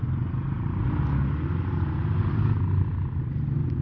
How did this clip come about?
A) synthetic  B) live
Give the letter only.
B